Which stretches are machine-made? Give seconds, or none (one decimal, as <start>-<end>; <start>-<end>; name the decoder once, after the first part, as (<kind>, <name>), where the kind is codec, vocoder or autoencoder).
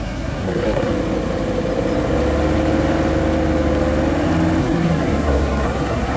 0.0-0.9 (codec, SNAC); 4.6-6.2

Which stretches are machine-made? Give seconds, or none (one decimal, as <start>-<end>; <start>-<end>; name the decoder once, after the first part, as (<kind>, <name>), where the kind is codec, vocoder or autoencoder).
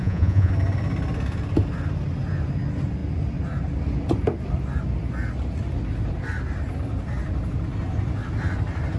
0.0-0.5 (vocoder, Vocos)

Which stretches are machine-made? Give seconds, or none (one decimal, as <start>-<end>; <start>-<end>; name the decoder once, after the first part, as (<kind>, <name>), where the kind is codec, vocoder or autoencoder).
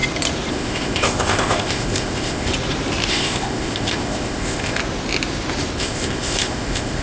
0.5-2.5 (codec, ZipCodec); 3.1-4.8; 5.8-7.0